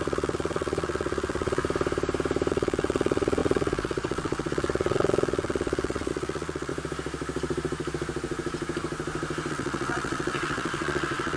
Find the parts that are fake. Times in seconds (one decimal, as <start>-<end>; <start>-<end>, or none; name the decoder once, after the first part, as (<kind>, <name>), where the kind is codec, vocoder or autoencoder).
0.0-1.6 (vocoder, WaveNeXt); 2.5-6.7; 9.5-11.4